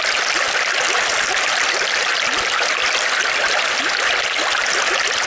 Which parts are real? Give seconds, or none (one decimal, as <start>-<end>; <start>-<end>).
0.0-5.3